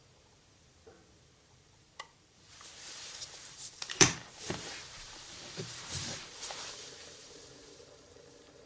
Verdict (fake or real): fake